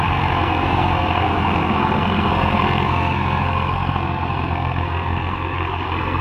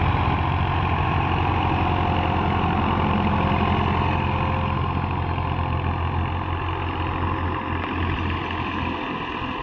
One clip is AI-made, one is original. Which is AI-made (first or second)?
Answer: first